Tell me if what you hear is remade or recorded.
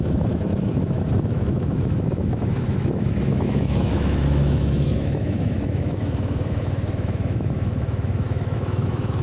remade